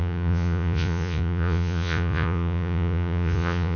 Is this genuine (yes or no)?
no